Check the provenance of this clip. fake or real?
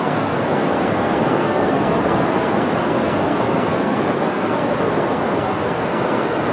fake